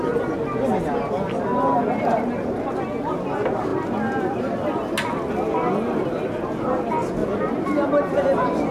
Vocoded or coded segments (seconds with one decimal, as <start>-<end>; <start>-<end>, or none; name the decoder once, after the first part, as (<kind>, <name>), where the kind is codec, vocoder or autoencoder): 7.2-8.7 (vocoder, BigVGAN v2)